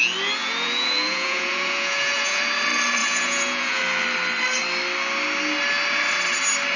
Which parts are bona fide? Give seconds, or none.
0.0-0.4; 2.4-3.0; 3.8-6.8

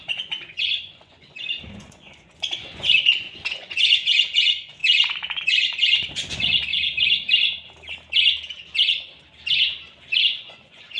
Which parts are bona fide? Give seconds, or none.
6.7-10.2

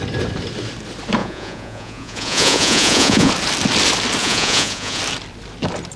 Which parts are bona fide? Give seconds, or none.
0.0-1.2; 3.3-4.2; 5.0-6.0

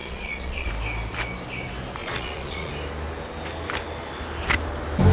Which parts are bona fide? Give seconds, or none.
0.7-2.0; 2.7-5.1

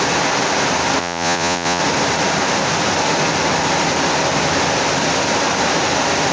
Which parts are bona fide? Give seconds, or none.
0.0-1.0; 1.8-6.3

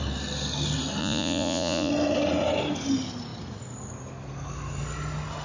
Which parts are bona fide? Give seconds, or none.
0.0-1.0; 1.9-5.4

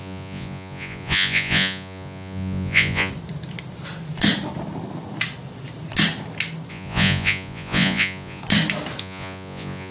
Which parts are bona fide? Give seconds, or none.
3.1-6.7; 8.4-9.0